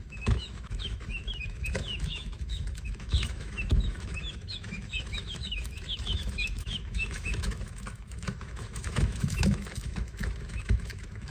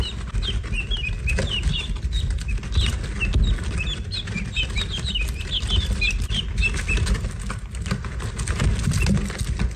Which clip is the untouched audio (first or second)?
second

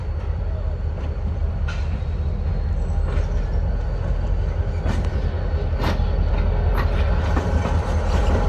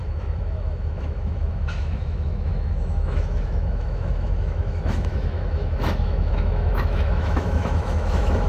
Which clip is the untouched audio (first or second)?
first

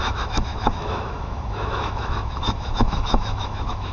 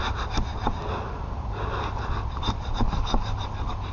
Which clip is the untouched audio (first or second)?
second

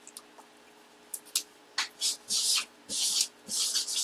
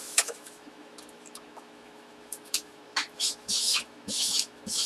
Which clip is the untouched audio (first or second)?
first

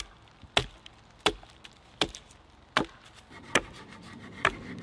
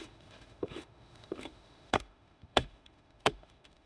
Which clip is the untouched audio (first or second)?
first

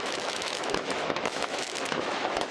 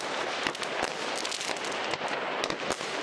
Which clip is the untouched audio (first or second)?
second